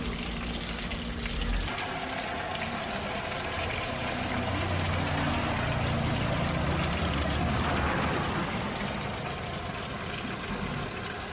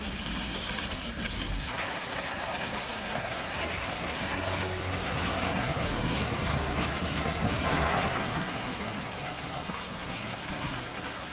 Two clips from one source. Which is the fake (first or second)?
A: second